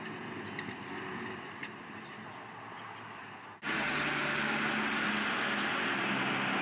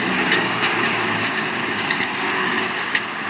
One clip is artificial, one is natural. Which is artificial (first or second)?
second